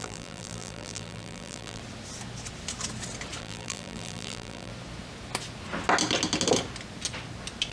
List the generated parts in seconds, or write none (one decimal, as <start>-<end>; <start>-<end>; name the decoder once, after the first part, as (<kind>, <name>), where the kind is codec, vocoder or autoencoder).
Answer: 0.0-1.8 (vocoder, BigVGAN v2); 3.4-4.7